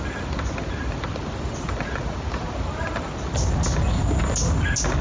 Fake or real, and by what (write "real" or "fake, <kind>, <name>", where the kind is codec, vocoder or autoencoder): real